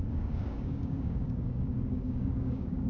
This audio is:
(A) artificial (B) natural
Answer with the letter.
A